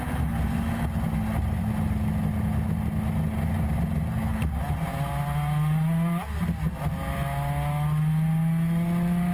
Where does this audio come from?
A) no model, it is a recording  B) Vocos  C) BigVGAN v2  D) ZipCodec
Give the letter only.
A